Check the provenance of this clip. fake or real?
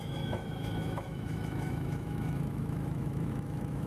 fake